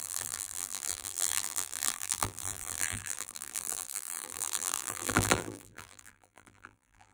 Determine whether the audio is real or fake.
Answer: fake